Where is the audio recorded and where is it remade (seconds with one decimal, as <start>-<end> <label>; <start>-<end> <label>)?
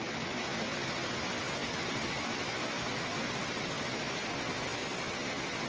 0.0-5.7 recorded